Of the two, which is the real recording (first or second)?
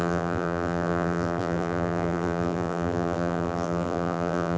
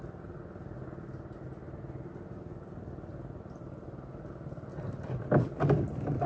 second